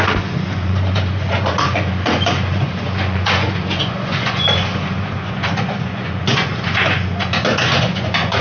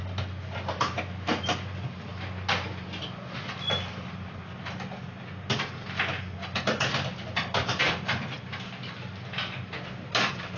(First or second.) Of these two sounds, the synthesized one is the first